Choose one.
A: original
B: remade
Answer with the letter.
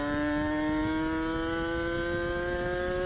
A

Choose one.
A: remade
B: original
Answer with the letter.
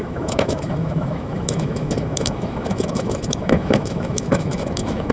A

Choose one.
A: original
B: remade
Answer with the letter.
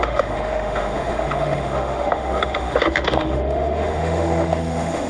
B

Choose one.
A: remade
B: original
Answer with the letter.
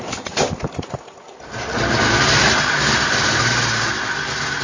B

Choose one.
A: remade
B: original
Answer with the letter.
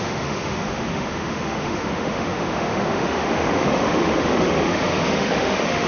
A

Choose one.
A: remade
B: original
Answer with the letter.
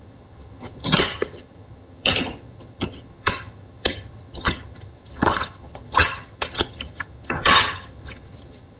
A